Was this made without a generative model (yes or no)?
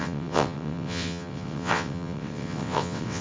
no